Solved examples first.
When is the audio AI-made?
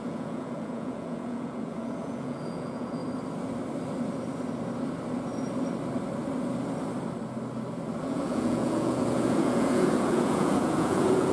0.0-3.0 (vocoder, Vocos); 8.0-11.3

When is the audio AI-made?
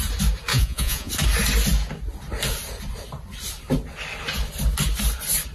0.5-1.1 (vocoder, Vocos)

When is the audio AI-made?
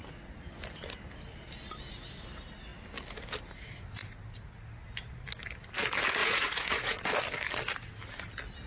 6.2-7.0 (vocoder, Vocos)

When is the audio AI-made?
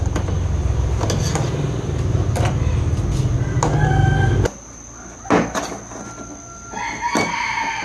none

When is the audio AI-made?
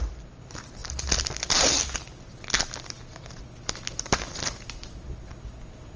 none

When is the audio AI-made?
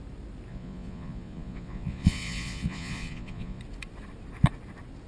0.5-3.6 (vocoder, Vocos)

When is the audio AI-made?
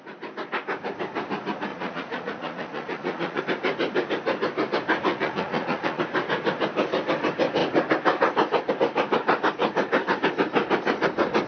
1.7-3.4 (vocoder, Vocos); 5.1-6.0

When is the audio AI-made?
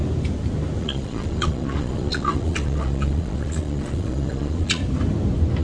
0.8-4.8 (vocoder, Vocos)